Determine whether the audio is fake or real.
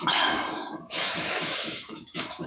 fake